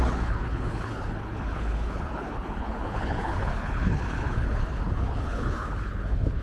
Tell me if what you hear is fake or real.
fake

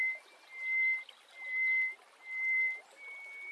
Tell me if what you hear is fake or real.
real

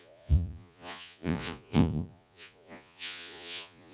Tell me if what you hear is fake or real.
fake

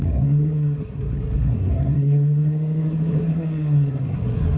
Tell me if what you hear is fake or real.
fake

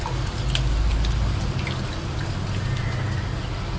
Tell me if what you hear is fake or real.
real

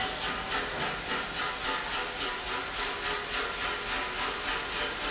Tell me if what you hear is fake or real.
real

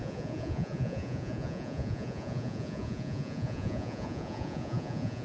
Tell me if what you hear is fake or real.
fake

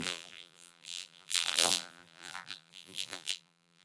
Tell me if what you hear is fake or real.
fake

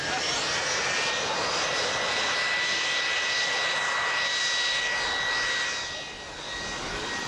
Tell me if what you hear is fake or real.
real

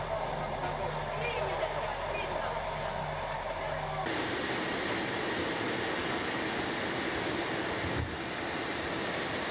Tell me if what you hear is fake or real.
real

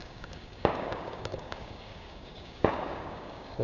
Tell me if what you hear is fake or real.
fake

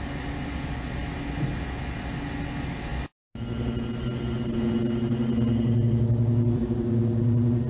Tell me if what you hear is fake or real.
real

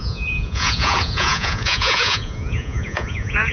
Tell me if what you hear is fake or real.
fake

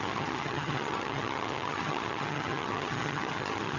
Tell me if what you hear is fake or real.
fake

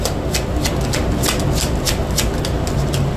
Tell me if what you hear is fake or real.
real